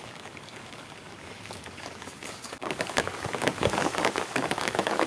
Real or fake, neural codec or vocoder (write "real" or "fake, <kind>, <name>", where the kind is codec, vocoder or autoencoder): fake, codec, DAC